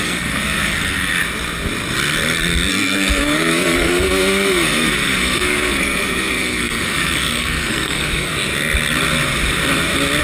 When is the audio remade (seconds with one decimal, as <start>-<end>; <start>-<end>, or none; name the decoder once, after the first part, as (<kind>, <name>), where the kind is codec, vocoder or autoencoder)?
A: 0.0-1.2 (codec, SNAC); 2.7-8.3